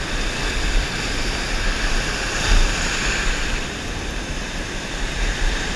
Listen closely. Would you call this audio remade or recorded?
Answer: remade